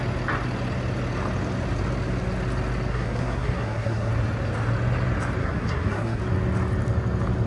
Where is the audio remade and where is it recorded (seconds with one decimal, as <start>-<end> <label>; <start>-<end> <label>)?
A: 0.0-2.9 recorded; 2.9-4.1 remade; 4.1-5.4 recorded; 5.4-6.2 remade; 6.2-7.5 recorded